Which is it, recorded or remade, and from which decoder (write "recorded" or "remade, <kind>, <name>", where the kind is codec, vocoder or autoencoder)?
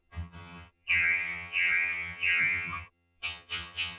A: remade, vocoder, HiFi-GAN